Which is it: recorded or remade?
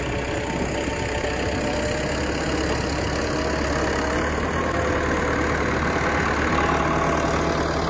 recorded